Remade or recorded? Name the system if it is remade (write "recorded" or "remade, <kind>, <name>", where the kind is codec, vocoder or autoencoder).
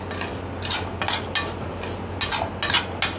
recorded